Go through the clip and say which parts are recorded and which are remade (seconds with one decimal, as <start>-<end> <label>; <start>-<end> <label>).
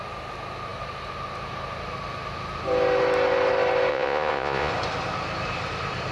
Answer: 0.0-3.9 recorded; 3.9-4.7 remade; 4.7-6.1 recorded